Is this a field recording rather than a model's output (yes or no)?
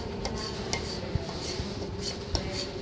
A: yes